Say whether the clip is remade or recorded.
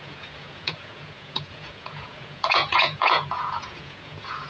remade